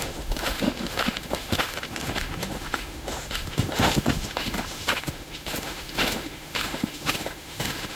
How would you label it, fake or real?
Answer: fake